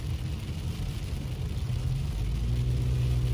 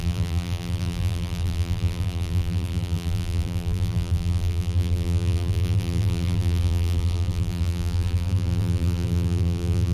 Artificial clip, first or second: second